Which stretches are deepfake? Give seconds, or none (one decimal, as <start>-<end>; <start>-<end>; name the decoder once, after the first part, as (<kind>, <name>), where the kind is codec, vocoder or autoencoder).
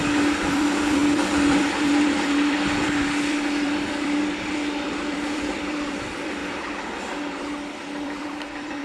0.0-6.4 (vocoder, BigVGAN v2); 7.3-8.8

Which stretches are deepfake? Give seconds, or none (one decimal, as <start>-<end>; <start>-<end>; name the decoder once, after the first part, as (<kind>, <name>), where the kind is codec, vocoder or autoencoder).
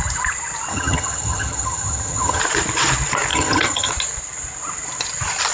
0.7-2.4 (vocoder, HiFi-GAN); 3.3-3.9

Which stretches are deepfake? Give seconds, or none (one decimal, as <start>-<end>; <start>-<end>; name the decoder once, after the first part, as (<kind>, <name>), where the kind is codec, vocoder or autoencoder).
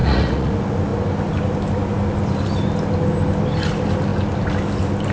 0.0-0.5 (vocoder, Vocos)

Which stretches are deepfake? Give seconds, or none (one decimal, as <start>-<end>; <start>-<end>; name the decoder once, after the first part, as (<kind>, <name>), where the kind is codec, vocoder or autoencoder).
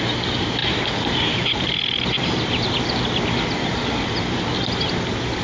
0.6-3.0 (vocoder, BigVGAN v2); 3.6-4.4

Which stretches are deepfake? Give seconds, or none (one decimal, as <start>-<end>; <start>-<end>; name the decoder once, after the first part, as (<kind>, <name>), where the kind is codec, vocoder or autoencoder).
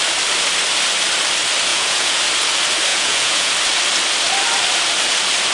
1.7-2.2 (vocoder, Vocos); 2.9-3.5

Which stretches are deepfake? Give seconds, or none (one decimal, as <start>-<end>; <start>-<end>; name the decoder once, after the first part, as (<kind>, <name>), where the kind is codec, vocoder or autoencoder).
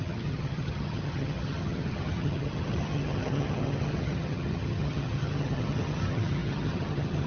0.0-7.3 (vocoder, HiFi-GAN)